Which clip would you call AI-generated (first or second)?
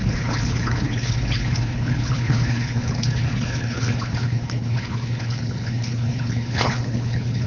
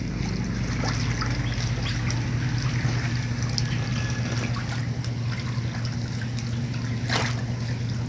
first